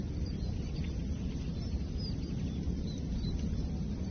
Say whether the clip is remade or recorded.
recorded